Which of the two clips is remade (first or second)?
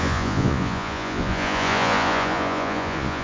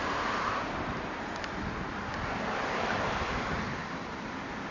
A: first